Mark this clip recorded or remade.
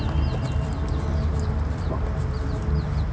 recorded